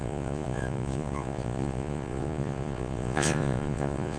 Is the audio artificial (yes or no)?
yes